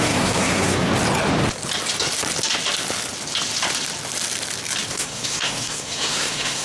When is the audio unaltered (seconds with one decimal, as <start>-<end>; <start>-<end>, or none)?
0.9-4.9